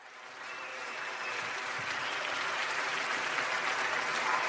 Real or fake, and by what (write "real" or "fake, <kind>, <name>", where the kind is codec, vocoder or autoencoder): real